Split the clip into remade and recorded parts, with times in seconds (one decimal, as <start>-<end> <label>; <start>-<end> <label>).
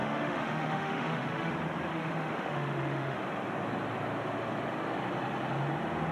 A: 0.0-1.5 remade; 1.5-1.9 recorded; 1.9-3.2 remade; 3.2-6.1 recorded